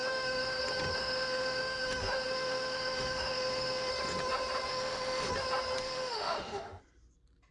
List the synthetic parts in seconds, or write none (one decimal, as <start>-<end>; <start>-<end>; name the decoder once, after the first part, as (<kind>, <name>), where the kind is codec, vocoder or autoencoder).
0.0-0.6 (autoencoder, DAC-VAE); 1.0-3.9; 4.7-5.3; 5.8-6.8